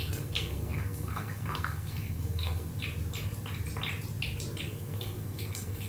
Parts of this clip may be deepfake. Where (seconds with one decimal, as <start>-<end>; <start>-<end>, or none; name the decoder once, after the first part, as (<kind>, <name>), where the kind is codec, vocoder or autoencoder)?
0.0-2.7 (codec, SNAC); 4.6-5.9